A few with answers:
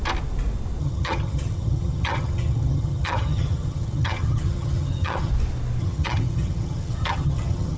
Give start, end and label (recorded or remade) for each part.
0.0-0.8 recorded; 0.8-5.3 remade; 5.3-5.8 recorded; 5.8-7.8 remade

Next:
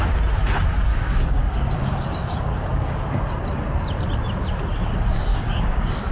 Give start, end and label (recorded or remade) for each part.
0.0-0.9 recorded; 0.9-3.3 remade; 3.3-5.3 recorded; 5.3-6.1 remade

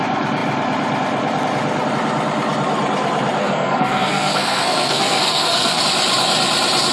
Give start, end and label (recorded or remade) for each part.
0.0-3.4 recorded; 3.4-5.8 remade; 5.8-6.9 recorded

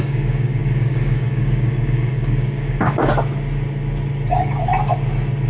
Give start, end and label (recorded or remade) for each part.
0.0-3.1 remade; 3.1-4.3 recorded; 4.3-4.7 remade; 4.7-5.5 recorded

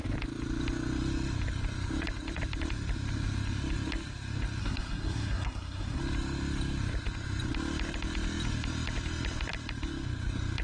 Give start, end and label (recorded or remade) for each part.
0.0-4.6 recorded; 4.6-6.0 remade; 6.0-10.6 recorded

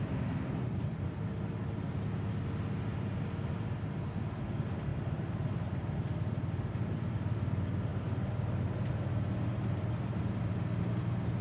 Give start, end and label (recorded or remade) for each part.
0.0-4.9 recorded; 4.9-7.1 remade; 7.1-11.4 recorded

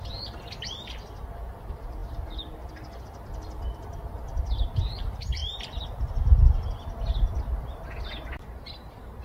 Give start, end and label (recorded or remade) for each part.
0.0-9.2 remade